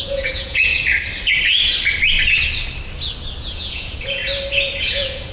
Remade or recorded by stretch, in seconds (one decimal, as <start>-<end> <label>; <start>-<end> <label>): 0.0-0.7 remade; 0.7-3.4 recorded; 3.4-4.2 remade; 4.2-4.8 recorded; 4.8-5.3 remade